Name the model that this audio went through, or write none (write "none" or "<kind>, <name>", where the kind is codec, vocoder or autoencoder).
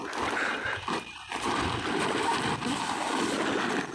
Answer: none